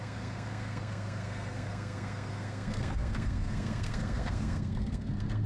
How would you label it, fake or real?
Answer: fake